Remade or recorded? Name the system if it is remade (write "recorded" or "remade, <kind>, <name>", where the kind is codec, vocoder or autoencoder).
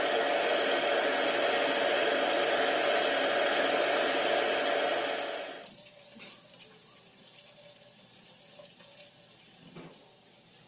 recorded